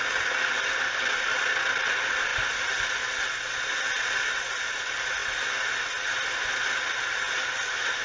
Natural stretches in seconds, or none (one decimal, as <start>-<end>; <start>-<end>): 0.0-8.0